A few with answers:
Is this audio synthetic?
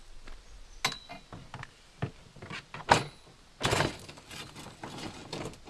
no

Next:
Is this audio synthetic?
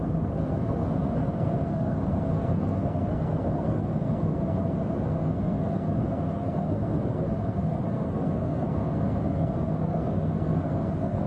yes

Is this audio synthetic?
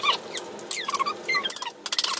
no